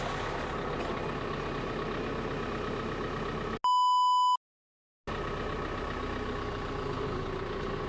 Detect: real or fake real